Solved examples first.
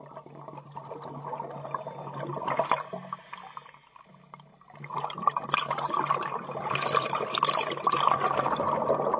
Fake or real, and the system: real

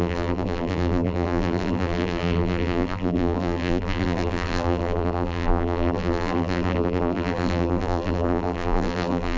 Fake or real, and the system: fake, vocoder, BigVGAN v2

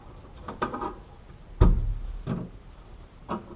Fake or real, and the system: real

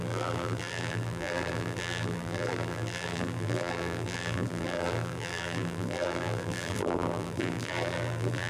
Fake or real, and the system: fake, vocoder, BigVGAN v2